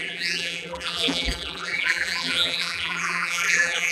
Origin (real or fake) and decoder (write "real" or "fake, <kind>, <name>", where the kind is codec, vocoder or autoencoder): fake, vocoder, BigVGAN v2